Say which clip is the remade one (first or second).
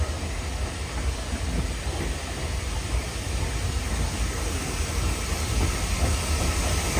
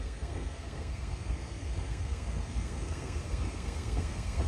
second